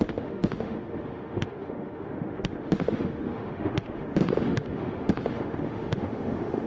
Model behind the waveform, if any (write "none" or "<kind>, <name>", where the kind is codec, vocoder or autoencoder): autoencoder, DAC-VAE